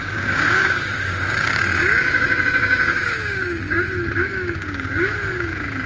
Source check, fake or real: fake